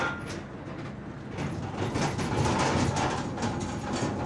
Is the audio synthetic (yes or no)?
no